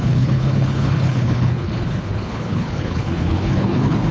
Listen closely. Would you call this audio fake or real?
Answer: fake